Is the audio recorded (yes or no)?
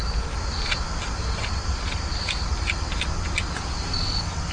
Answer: yes